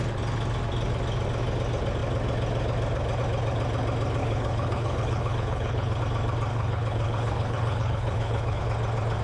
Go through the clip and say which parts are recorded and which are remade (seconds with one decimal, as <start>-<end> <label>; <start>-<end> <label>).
0.0-4.2 recorded; 4.2-6.0 remade; 6.0-6.5 recorded; 6.5-8.6 remade; 8.6-9.2 recorded